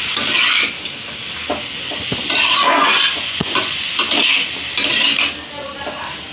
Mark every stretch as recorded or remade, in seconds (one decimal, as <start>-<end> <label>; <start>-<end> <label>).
0.0-2.7 recorded; 2.7-3.9 remade; 3.9-6.3 recorded